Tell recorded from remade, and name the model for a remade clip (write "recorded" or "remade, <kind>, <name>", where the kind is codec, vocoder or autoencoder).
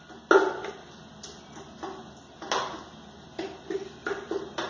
recorded